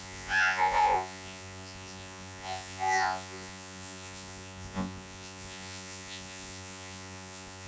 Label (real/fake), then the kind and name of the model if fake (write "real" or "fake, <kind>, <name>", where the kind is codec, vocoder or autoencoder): fake, vocoder, Vocos